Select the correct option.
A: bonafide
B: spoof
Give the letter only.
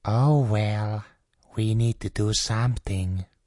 A